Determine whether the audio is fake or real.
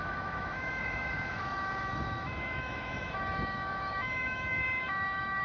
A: fake